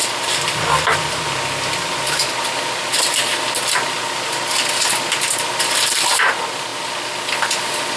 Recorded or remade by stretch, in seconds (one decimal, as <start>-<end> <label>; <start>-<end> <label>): 0.0-3.2 recorded; 3.2-5.5 remade; 5.5-8.0 recorded